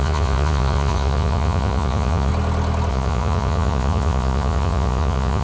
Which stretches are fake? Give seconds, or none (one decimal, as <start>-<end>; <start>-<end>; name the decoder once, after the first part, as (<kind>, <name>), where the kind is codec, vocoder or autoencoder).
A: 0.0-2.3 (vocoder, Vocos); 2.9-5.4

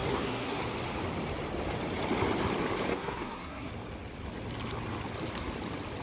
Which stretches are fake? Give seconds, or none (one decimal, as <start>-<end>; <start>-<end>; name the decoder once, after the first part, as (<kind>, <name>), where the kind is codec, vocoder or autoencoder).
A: 0.0-0.6 (codec, SNAC); 2.9-3.7

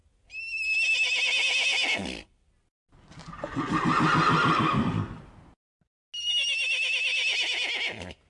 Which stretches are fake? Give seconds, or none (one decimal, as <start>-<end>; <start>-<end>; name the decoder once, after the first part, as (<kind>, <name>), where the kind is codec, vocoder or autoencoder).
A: none